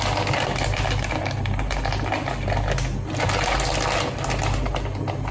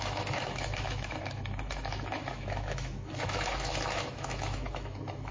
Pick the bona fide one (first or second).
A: first